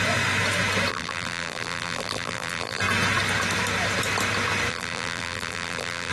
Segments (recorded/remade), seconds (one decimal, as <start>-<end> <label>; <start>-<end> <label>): 0.0-0.9 recorded; 0.9-2.8 remade; 2.8-4.7 recorded; 4.7-6.1 remade